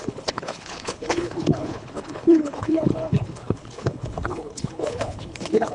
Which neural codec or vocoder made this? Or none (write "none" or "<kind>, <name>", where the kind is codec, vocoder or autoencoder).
codec, HILCodec